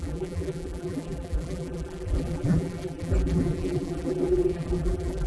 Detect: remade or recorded remade